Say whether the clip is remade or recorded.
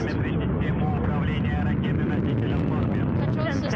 recorded